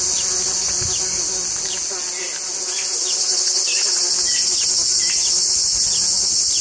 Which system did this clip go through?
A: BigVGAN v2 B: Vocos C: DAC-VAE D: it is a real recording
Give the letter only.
D